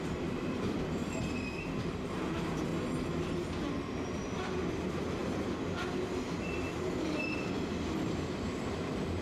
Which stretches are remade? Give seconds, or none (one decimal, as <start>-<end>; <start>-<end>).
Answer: 0.0-2.7; 4.2-9.2